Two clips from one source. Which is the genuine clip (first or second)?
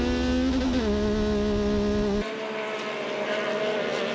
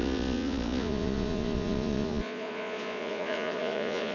first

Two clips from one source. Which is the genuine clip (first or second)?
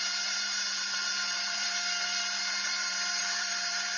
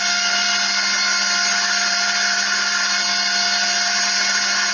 second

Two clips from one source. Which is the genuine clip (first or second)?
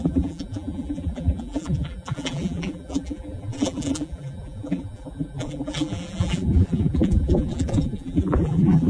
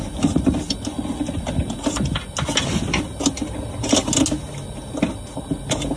second